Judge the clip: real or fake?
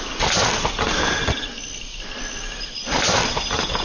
real